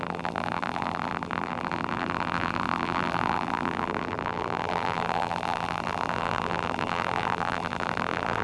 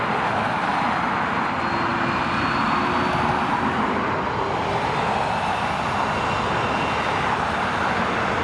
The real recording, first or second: second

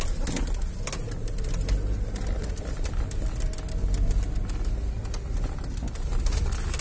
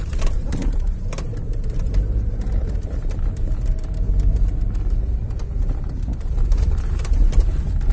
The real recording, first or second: first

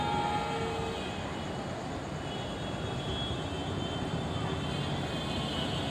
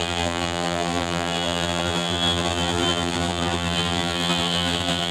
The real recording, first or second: first